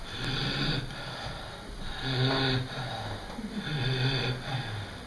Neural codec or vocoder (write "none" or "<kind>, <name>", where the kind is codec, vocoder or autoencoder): none